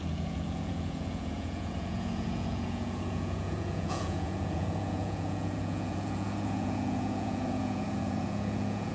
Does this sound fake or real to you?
fake